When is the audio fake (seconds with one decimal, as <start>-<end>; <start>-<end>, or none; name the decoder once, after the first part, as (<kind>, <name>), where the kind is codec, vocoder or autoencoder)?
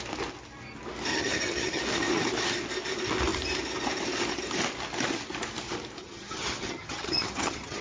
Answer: 1.1-1.8 (vocoder, HiFi-GAN); 6.0-7.8